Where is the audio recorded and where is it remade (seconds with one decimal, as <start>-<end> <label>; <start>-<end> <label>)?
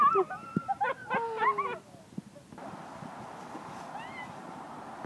0.0-1.0 remade; 1.0-4.1 recorded; 4.1-5.1 remade